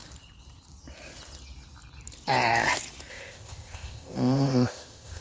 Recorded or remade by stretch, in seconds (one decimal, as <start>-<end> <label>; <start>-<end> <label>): 0.0-3.1 recorded; 3.1-5.2 remade